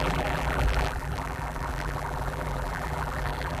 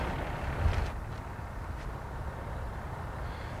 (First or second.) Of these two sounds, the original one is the second